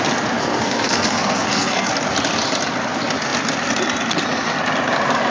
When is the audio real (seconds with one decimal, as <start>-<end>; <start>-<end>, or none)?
0.0-0.4; 1.9-5.3